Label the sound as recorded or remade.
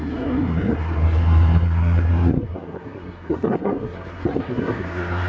remade